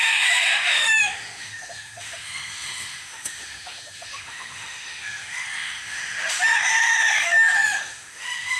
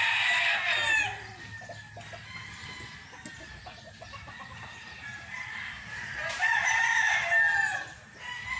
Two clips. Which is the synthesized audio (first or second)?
first